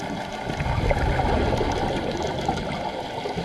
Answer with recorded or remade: recorded